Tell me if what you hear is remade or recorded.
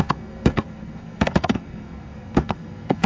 remade